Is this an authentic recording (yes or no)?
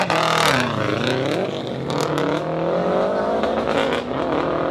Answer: yes